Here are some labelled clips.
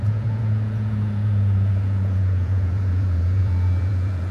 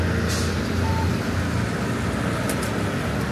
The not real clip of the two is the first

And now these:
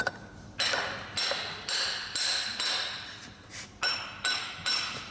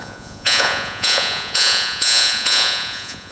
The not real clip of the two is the second